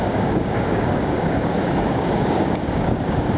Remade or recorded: remade